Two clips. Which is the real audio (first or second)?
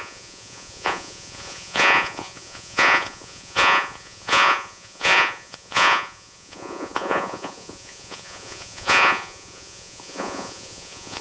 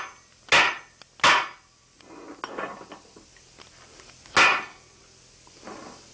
second